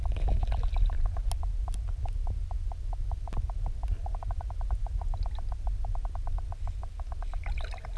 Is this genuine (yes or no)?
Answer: yes